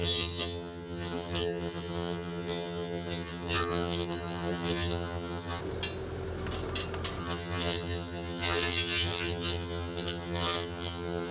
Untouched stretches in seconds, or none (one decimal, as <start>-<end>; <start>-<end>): 5.6-7.2